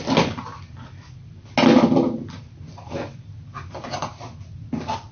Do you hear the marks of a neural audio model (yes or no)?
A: no